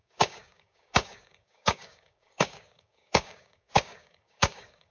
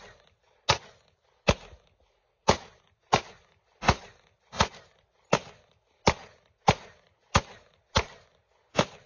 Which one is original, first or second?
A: second